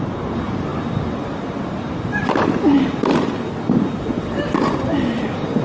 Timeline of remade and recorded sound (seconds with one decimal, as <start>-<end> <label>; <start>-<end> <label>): 0.0-5.6 recorded